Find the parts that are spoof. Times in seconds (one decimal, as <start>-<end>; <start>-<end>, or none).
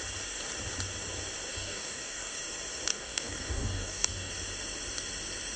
1.5-2.4; 2.9-4.3